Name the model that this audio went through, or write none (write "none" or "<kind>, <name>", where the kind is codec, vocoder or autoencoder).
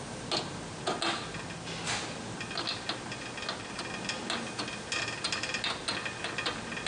none